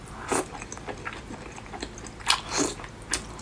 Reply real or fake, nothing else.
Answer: real